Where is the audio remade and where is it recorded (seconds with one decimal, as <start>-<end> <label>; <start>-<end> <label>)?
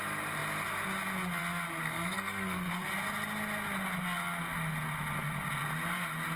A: 0.0-1.8 recorded; 1.8-2.9 remade; 2.9-6.4 recorded